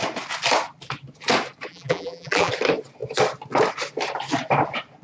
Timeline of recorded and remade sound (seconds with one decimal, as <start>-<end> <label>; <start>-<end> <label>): 0.0-1.7 recorded; 1.7-2.5 remade; 2.5-5.0 recorded